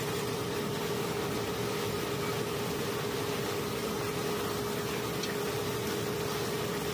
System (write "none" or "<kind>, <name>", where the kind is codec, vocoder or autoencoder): none